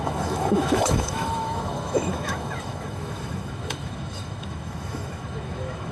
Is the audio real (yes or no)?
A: no